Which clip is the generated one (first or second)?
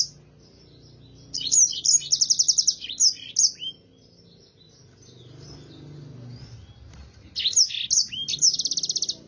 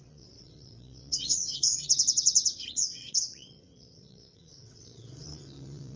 second